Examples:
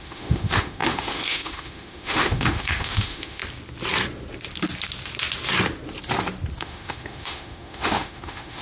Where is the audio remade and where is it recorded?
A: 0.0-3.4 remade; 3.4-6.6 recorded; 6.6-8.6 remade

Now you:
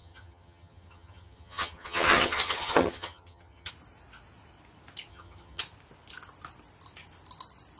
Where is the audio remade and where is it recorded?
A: 0.0-3.7 remade; 3.7-5.1 recorded; 5.1-5.6 remade; 5.6-7.8 recorded

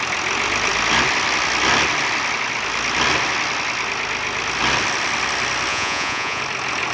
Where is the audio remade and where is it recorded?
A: 0.0-5.7 recorded; 5.7-6.4 remade; 6.4-6.9 recorded

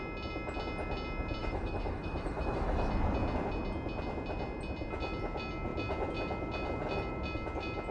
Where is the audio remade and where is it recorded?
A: 0.0-1.4 recorded; 1.4-2.9 remade; 2.9-7.9 recorded

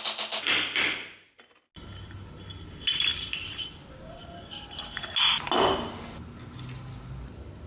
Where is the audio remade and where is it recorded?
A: 0.0-7.7 recorded

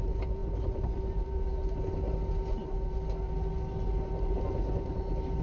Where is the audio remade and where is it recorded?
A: 0.0-5.4 recorded